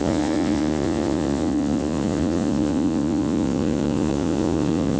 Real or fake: fake